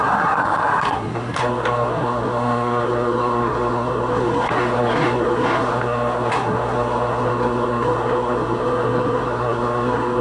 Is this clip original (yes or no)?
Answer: no